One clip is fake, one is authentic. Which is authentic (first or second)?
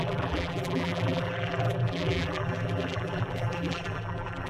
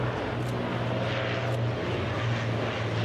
second